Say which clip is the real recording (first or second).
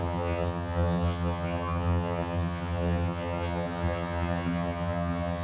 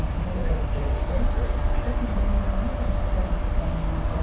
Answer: second